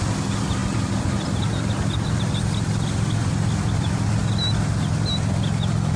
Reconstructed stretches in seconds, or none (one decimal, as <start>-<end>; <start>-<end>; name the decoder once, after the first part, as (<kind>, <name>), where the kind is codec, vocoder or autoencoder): none